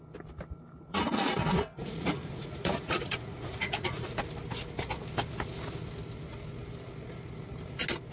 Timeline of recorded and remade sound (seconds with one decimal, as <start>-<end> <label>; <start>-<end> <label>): 0.0-0.9 recorded; 0.9-4.1 remade; 4.1-8.1 recorded